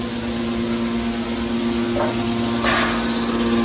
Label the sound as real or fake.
real